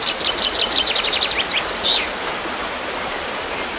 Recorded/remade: remade